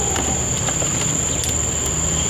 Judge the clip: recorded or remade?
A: recorded